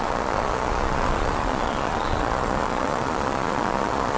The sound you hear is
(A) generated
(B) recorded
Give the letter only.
A